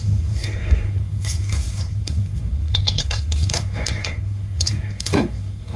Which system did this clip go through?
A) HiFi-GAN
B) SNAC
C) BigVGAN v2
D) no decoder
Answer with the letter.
B